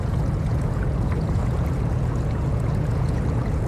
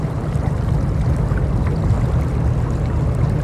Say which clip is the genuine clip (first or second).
second